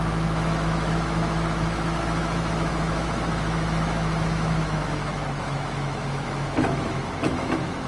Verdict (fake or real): fake